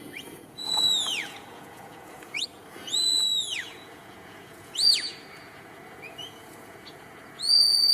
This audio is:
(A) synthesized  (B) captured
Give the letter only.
A